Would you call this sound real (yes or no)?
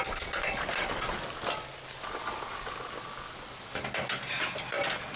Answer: yes